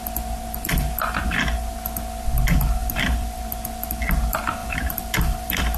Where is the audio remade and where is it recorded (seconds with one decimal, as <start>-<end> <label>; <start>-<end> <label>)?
0.0-2.8 recorded; 2.8-3.4 remade; 3.4-4.6 recorded; 4.6-5.8 remade